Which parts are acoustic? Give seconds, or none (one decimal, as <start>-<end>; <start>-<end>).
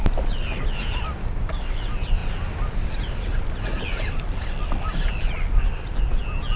0.0-1.2; 1.8-6.6